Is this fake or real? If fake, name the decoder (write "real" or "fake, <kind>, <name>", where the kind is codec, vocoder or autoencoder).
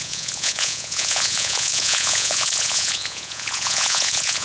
fake, vocoder, Vocos